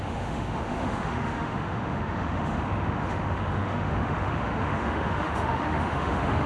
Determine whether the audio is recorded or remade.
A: remade